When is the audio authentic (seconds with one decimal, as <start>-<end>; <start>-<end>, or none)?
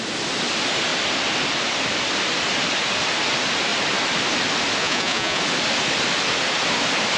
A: 0.0-4.8; 5.4-7.2